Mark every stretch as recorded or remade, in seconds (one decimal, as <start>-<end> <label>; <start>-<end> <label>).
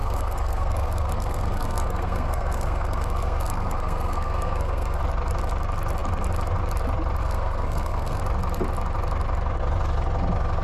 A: 0.0-5.0 remade; 5.0-7.2 recorded; 7.2-8.2 remade; 8.2-10.6 recorded